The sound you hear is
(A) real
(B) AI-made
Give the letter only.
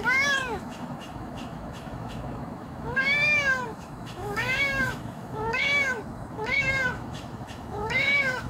B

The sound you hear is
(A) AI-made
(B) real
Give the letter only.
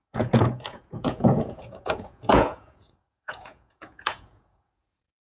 A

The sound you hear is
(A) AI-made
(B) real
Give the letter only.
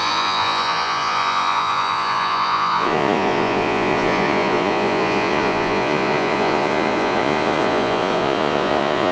A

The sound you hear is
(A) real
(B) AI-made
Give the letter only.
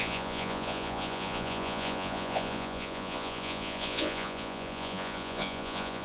B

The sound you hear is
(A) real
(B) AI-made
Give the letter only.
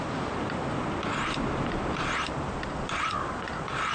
B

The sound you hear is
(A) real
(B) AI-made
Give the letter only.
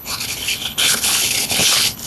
B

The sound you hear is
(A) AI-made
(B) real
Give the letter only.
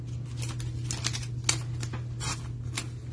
B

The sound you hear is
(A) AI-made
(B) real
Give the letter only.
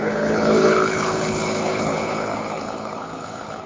A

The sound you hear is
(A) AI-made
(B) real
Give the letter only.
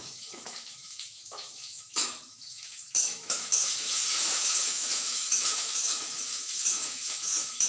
A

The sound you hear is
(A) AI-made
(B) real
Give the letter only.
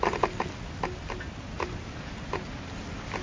B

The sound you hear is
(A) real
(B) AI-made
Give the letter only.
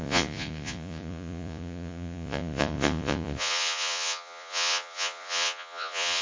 B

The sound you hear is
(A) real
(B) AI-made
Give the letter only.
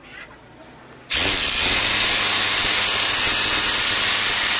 A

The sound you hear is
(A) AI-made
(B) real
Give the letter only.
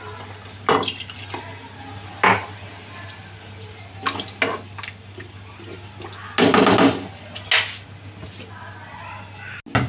B